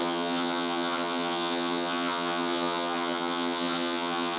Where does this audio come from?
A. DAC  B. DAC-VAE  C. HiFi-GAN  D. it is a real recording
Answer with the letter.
C